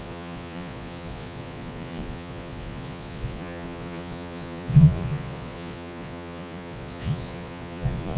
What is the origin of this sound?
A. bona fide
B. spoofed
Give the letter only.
B